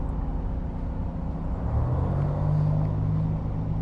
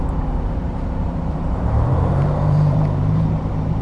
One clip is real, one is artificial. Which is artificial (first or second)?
second